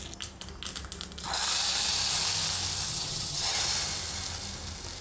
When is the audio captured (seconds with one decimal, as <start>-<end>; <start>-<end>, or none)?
0.0-2.9; 3.6-5.0